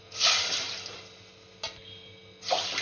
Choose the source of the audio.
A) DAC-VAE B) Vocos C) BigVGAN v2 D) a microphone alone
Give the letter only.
D